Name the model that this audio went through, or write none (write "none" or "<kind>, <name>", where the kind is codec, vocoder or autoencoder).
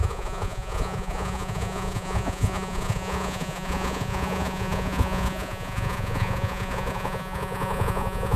vocoder, Vocos